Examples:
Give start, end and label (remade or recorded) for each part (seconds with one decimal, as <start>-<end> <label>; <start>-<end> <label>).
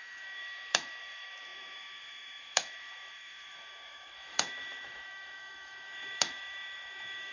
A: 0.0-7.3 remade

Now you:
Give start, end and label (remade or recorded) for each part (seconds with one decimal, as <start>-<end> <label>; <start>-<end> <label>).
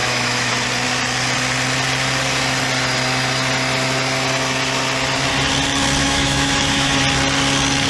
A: 0.0-0.5 remade; 0.5-6.0 recorded; 6.0-7.0 remade; 7.0-7.9 recorded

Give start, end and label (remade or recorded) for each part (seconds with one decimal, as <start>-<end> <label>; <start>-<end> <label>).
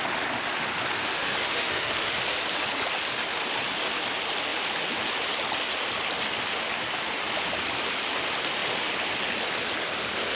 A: 0.0-1.1 recorded; 1.1-2.2 remade; 2.2-10.3 recorded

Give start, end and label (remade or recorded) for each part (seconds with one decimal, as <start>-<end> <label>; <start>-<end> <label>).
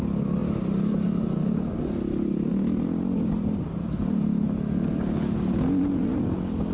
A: 0.0-6.7 recorded